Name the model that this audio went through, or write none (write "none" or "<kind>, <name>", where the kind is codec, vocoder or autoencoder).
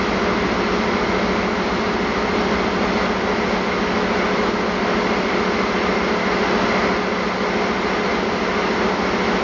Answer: none